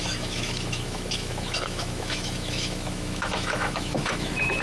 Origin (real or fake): fake